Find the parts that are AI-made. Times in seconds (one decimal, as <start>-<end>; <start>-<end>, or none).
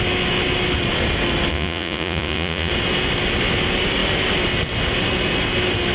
1.5-2.7